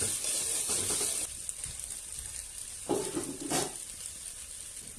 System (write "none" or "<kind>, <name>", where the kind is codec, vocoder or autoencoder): none